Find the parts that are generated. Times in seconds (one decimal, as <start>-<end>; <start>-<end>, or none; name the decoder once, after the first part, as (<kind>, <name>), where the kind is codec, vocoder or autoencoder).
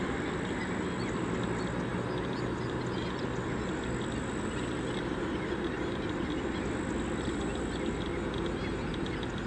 none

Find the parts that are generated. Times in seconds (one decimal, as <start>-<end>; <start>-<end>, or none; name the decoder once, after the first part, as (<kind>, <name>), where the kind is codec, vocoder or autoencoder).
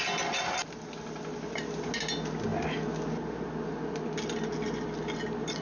none